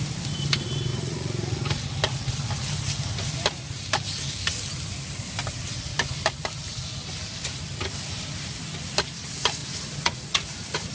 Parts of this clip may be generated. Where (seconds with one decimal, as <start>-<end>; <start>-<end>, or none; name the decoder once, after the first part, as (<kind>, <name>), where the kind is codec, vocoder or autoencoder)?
0.9-1.8 (vocoder, Vocos); 9.6-10.9